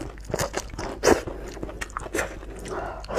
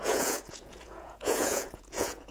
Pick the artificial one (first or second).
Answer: second